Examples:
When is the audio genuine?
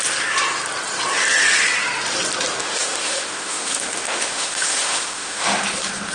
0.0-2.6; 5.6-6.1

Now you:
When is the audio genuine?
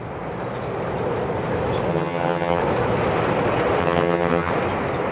0.0-1.9; 2.6-3.8; 4.5-5.1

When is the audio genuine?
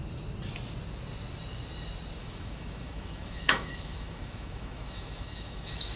0.0-2.2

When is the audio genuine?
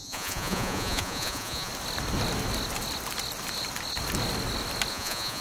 1.7-4.9